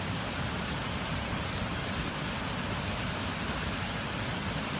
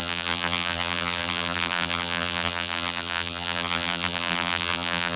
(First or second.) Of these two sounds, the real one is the first